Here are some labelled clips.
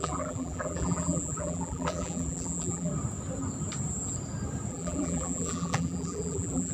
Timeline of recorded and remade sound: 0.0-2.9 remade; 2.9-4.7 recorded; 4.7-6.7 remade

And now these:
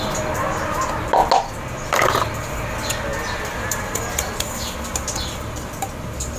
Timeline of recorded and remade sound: 0.0-6.4 recorded